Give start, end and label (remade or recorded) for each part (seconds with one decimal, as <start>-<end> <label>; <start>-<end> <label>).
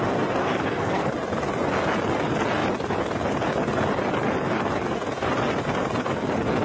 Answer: 0.0-0.4 recorded; 0.4-1.1 remade; 1.1-6.6 recorded